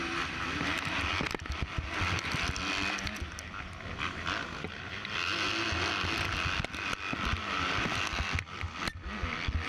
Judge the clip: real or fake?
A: real